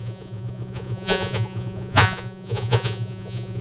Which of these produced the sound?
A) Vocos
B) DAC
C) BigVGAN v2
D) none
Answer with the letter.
A